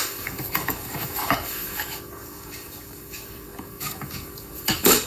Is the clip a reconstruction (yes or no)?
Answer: yes